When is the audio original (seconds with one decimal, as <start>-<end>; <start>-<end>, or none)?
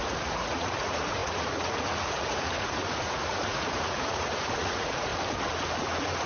5.1-5.8